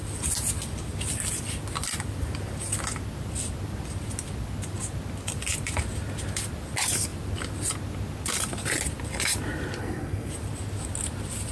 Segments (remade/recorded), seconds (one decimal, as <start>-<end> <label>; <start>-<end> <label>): 0.0-9.8 recorded; 9.8-10.3 remade; 10.3-11.5 recorded